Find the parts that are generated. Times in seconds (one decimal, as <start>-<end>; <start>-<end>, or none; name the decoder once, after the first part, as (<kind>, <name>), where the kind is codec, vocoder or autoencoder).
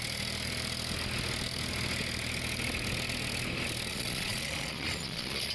3.9-5.5 (vocoder, Vocos)